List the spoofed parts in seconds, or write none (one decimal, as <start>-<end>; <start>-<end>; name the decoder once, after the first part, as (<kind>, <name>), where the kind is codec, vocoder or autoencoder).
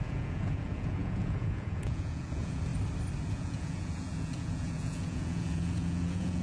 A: 0.0-2.7 (vocoder, Vocos); 3.3-6.4